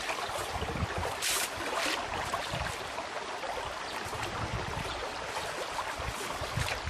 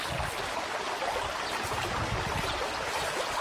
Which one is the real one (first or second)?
second